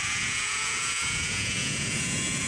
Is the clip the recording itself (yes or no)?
no